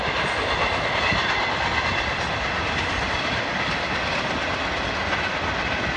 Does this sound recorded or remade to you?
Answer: recorded